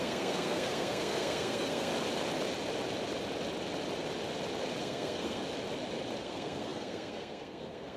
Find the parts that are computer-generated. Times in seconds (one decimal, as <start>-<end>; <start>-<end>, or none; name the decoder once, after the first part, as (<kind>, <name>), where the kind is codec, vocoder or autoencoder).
0.0-1.9 (codec, SNAC); 4.8-5.4; 6.2-8.0